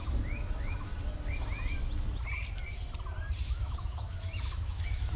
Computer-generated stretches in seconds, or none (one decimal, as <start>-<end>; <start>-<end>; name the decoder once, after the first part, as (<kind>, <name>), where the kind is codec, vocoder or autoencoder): 0.0-0.9 (autoencoder, DAC-VAE); 3.4-5.2